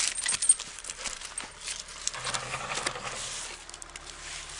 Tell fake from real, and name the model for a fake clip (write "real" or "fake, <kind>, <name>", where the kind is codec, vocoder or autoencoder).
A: real